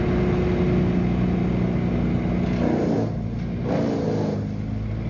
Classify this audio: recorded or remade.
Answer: recorded